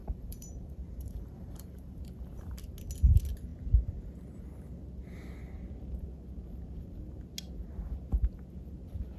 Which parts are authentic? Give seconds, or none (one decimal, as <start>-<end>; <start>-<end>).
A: 2.0-9.2